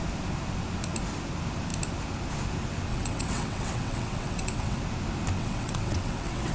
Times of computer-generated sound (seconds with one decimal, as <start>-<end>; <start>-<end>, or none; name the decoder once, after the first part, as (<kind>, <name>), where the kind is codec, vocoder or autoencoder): 2.9-4.8 (vocoder, WaveNeXt); 5.4-6.5